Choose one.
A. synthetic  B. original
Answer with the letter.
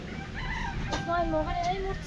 B